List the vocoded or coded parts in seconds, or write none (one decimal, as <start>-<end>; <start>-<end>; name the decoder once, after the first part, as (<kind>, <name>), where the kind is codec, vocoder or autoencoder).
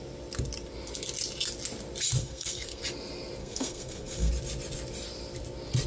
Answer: 2.2-2.8 (codec, SNAC); 3.4-4.3